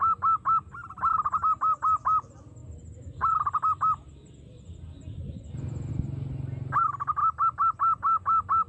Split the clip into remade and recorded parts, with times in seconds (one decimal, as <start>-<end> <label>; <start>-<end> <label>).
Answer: 0.0-8.7 recorded